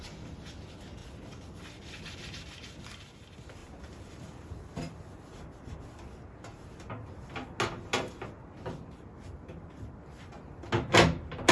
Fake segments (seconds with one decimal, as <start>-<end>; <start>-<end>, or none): none